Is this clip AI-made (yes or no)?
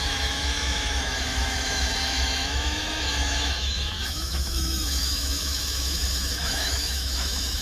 yes